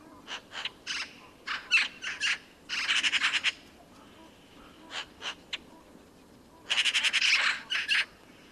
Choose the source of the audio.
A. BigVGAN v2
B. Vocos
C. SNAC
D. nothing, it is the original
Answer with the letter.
D